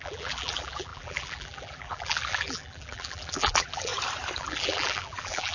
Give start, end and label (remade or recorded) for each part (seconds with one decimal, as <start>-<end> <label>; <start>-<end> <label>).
0.0-3.9 remade; 3.9-4.4 recorded; 4.4-5.5 remade